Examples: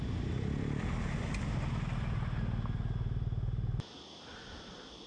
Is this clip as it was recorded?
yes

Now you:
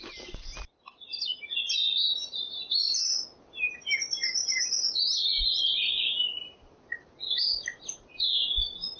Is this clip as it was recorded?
yes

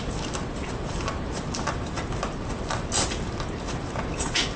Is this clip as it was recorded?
yes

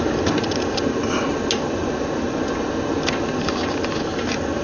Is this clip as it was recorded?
yes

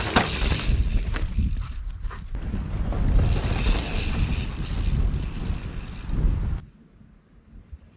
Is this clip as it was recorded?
yes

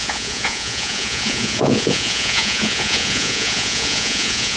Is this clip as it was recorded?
no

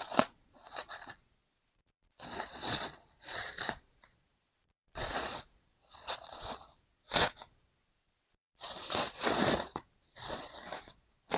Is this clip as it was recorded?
no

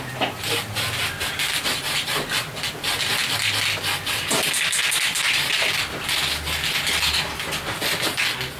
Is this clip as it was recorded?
yes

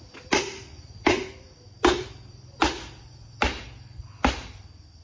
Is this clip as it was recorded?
yes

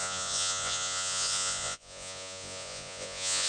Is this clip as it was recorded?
no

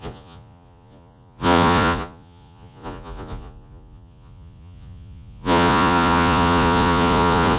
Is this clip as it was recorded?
no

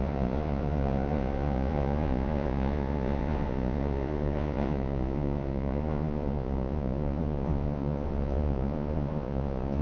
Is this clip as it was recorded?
no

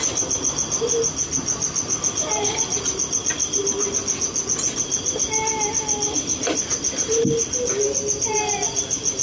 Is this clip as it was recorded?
yes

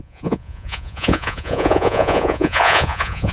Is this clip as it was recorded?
no